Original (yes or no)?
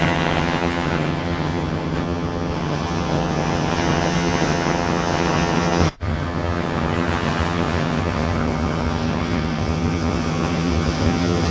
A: no